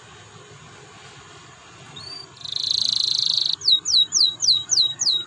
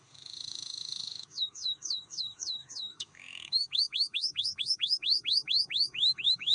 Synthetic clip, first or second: second